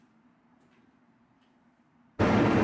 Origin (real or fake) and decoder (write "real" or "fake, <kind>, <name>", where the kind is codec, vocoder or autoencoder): fake, vocoder, BigVGAN v2